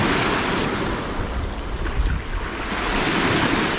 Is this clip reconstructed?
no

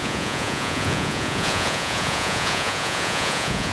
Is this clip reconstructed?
yes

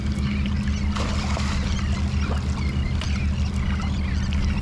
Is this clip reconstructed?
no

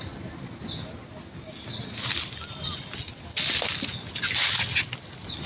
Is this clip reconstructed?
no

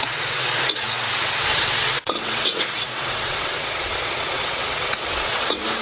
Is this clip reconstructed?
yes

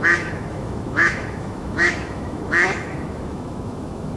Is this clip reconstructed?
yes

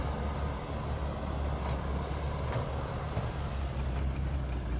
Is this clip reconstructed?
no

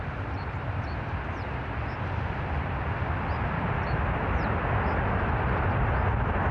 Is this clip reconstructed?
no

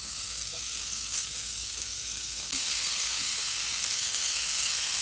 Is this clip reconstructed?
yes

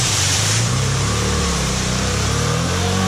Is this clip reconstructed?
yes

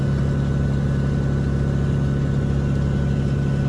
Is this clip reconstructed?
no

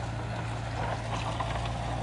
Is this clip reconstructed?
no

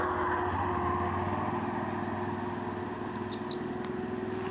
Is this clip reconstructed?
no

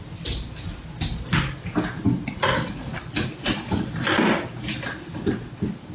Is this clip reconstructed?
no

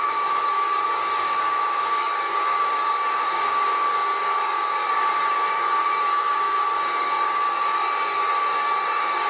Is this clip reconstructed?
yes